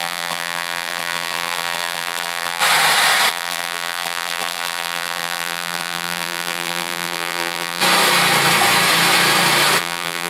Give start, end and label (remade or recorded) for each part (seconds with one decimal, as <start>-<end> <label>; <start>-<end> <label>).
0.0-2.6 remade; 2.6-3.3 recorded; 3.3-7.8 remade; 7.8-9.8 recorded; 9.8-10.3 remade